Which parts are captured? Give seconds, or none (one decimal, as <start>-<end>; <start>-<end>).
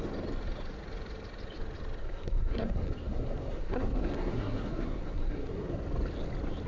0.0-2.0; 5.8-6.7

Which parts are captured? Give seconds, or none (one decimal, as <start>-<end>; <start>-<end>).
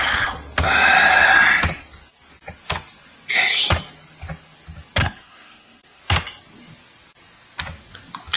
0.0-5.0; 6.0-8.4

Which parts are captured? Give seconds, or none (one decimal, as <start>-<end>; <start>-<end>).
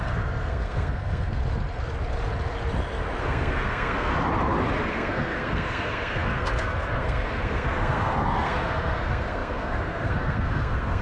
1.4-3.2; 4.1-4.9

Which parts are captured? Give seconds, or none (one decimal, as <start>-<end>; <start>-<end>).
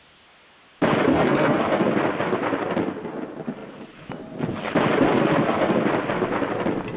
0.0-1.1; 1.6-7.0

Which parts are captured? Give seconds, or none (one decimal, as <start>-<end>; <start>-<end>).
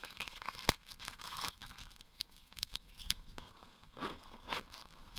none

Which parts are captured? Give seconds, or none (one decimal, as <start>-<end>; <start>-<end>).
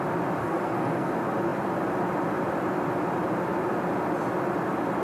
0.0-0.4; 1.1-5.0